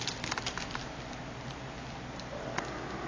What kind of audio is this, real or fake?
real